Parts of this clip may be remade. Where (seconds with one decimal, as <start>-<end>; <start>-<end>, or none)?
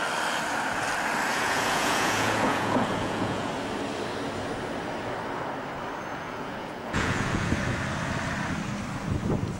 1.3-3.5; 6.1-7.5